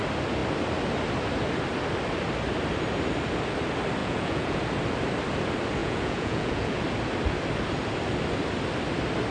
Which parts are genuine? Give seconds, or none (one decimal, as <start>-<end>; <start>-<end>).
0.0-4.0; 4.6-5.8; 6.8-9.3